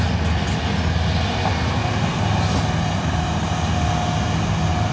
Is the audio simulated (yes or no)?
no